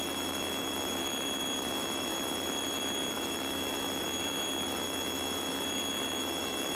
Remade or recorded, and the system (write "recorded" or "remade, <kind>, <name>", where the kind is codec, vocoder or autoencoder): remade, autoencoder, DAC-VAE